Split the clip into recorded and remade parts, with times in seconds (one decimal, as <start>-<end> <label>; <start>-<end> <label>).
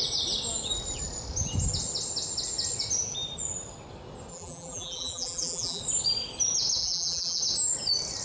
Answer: 0.0-4.3 recorded; 4.3-5.8 remade; 5.8-6.8 recorded; 6.8-7.4 remade; 7.4-8.2 recorded